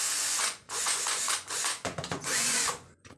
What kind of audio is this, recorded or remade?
remade